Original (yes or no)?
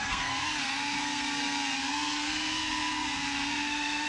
no